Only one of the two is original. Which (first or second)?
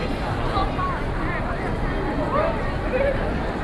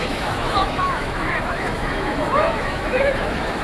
first